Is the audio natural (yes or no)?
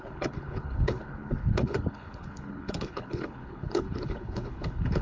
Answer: no